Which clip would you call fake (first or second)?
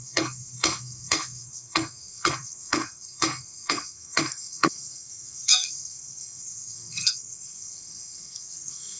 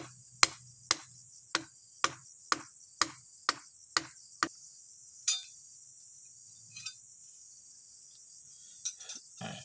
first